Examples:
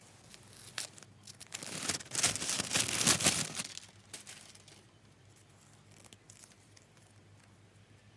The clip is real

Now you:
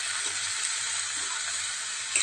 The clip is real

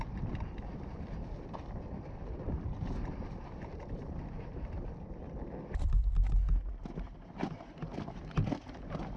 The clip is real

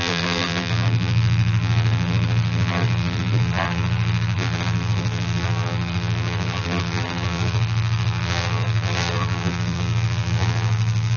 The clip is fake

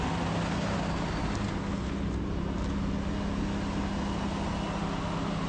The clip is real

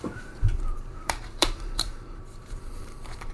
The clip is fake